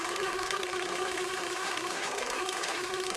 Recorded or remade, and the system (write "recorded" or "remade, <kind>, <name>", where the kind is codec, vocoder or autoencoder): remade, codec, SNAC